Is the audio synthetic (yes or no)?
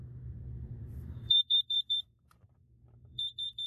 yes